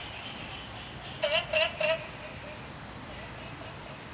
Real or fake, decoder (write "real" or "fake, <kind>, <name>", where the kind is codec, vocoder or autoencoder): real